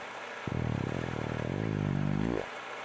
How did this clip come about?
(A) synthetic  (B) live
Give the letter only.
B